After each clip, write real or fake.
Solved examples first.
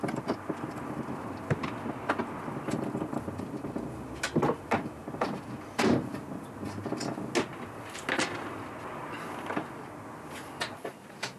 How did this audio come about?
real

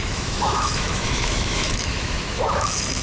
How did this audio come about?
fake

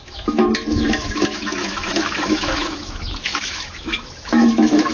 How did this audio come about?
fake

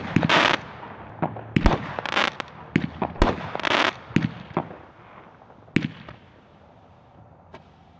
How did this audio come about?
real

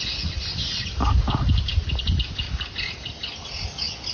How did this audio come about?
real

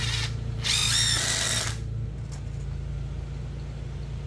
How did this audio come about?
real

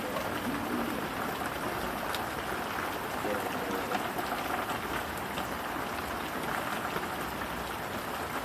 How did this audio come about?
real